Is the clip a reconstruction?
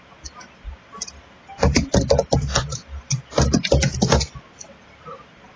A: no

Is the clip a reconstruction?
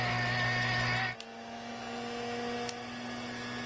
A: no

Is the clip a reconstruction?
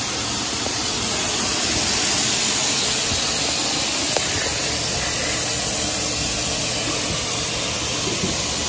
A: no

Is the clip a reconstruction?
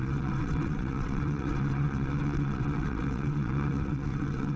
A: yes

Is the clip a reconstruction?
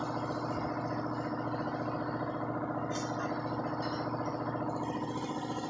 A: no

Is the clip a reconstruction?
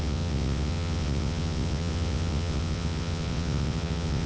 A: yes